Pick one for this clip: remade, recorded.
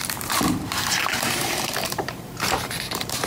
remade